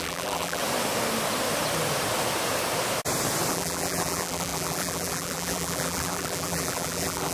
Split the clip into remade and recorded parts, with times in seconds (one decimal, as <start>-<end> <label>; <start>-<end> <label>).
0.0-0.6 remade; 0.6-3.5 recorded; 3.5-7.3 remade

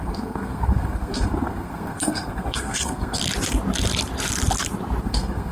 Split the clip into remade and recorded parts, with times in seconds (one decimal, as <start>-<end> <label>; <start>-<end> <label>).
0.0-3.2 remade; 3.2-5.0 recorded; 5.0-5.5 remade

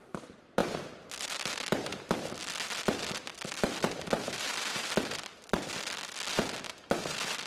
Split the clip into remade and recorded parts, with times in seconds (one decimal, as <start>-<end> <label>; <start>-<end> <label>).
0.0-0.6 remade; 0.6-1.2 recorded; 1.2-5.3 remade; 5.3-6.3 recorded; 6.3-7.5 remade

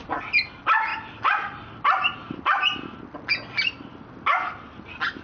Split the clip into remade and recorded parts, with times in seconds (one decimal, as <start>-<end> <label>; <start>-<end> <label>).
0.0-5.2 recorded

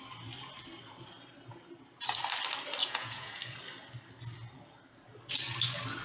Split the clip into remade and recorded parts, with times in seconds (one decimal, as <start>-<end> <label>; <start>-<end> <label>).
0.0-2.8 recorded; 2.8-3.4 remade; 3.4-6.0 recorded

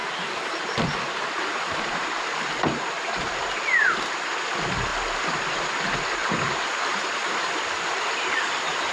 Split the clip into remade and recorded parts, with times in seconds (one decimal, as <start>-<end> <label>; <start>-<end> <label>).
0.0-2.9 remade; 2.9-4.9 recorded; 4.9-5.6 remade; 5.6-6.2 recorded; 6.2-8.9 remade